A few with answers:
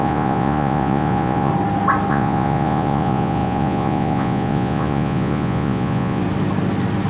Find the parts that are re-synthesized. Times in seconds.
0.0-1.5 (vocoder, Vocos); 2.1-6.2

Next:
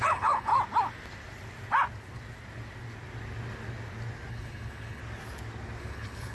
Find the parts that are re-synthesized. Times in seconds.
0.0-0.5 (codec, HILCodec); 4.3-5.0; 5.8-6.3

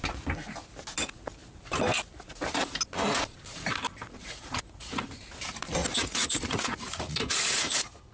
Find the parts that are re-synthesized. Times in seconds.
4.2-4.9 (vocoder, Vocos); 5.8-8.1

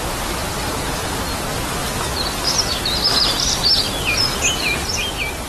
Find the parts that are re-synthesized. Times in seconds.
none